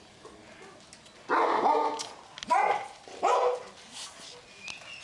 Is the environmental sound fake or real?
real